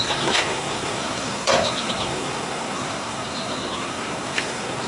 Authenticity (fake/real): fake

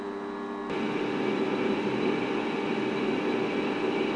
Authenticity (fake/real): real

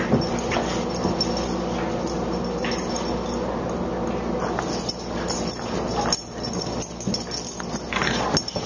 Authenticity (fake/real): real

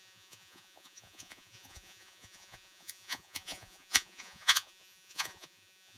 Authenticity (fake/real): fake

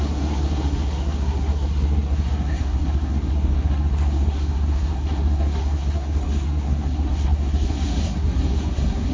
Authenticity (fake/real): fake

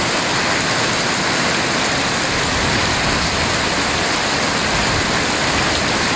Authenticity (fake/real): real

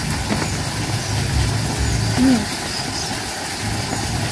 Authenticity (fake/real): real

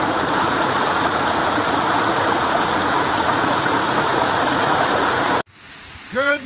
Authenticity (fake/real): fake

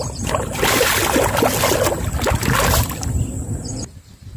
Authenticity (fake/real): real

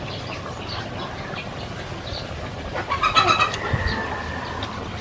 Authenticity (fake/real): real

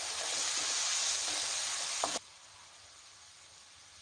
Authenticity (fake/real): real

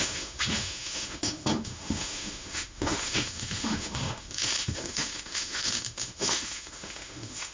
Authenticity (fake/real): fake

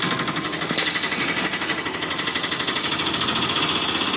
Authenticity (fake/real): real